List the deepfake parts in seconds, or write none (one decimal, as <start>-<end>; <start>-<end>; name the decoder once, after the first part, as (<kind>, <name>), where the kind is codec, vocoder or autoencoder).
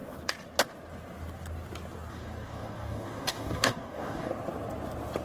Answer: 2.1-4.3 (codec, DAC)